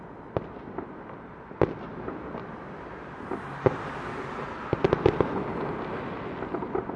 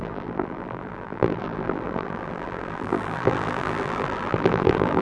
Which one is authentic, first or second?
first